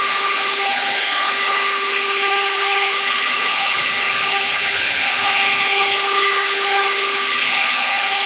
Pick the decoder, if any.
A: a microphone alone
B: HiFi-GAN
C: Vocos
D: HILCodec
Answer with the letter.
D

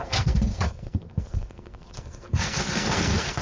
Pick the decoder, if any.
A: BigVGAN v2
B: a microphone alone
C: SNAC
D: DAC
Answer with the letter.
C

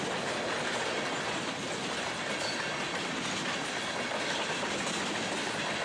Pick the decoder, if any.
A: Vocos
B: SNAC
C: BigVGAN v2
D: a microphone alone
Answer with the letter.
D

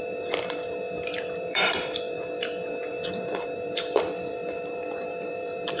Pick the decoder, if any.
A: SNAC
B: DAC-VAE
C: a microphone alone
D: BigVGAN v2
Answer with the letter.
D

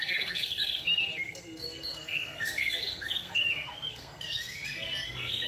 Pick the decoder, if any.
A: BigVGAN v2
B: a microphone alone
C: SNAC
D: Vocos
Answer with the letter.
C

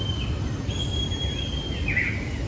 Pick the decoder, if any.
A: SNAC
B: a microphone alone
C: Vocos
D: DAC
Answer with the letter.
B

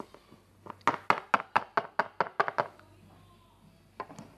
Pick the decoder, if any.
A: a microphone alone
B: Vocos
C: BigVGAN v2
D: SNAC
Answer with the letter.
A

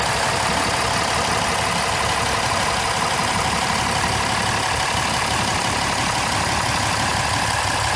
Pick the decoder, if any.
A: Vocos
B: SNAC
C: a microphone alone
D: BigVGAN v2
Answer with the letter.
C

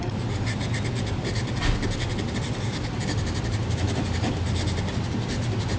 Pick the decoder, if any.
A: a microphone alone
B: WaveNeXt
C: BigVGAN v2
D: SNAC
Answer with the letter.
A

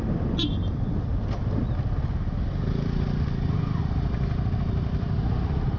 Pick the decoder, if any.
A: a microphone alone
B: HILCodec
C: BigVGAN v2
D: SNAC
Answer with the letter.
A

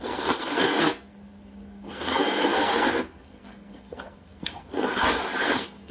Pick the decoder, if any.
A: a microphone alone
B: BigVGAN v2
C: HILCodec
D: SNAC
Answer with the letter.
D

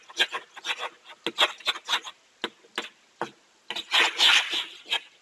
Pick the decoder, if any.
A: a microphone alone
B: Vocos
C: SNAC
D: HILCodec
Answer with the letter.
A